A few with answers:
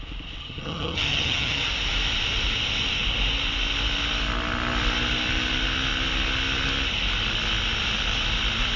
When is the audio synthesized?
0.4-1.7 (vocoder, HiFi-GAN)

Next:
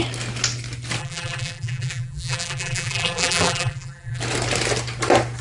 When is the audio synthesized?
1.0-4.2 (vocoder, BigVGAN v2)

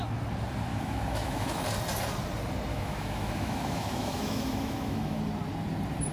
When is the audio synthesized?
0.7-1.6 (autoencoder, DAC-VAE); 2.7-5.2

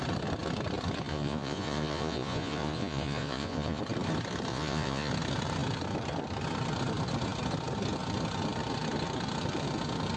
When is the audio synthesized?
1.1-3.8 (vocoder, Vocos); 4.5-5.1

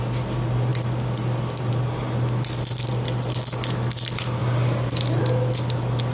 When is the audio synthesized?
none

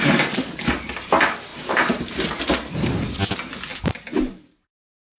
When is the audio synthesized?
1.5-2.4 (vocoder, BigVGAN v2); 3.7-5.2

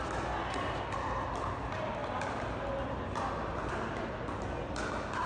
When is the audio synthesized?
none